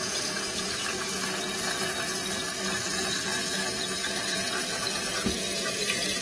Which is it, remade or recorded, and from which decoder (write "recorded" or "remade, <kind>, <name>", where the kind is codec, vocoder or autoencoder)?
remade, vocoder, Vocos